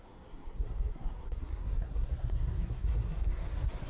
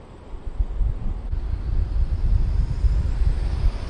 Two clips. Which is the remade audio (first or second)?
first